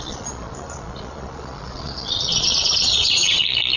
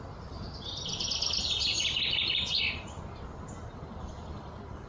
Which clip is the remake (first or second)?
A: first